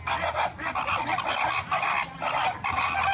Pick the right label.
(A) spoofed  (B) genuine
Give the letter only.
B